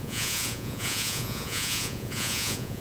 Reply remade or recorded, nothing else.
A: remade